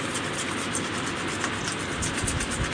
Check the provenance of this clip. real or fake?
real